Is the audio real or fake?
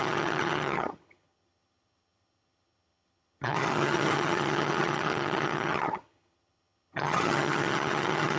fake